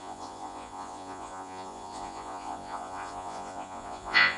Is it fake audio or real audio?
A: fake